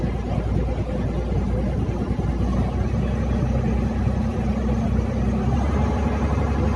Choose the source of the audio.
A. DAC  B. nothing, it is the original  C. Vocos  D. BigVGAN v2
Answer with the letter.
B